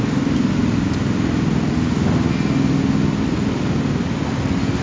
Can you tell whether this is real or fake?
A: real